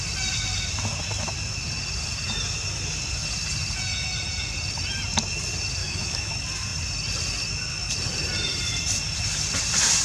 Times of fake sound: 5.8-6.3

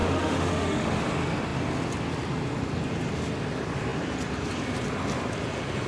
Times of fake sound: 0.0-1.0

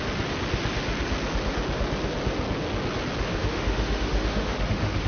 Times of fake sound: 3.3-5.1

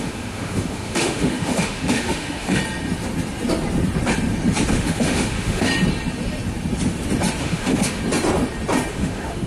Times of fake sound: 0.0-2.6; 4.7-5.7; 7.4-8.0; 8.9-9.5

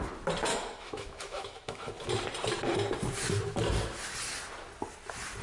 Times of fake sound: 0.5-1.9

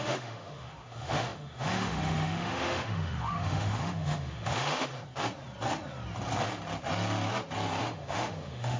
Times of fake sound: 0.0-4.9; 7.8-8.8

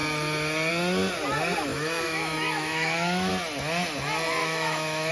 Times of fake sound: 1.7-3.3; 4.4-5.1

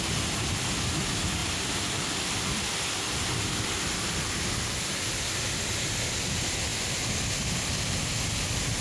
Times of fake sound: none